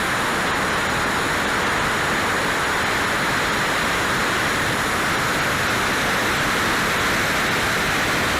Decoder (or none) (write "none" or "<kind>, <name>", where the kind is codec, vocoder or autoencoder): none